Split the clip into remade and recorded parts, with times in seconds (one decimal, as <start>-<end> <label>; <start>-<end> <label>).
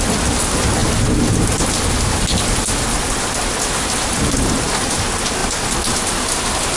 0.0-6.8 recorded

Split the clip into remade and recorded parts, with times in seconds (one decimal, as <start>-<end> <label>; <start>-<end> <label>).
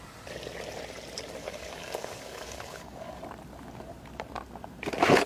0.0-1.4 recorded; 1.4-3.2 remade; 3.2-5.3 recorded